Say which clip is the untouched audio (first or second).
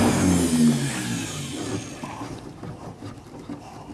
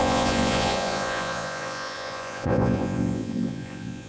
first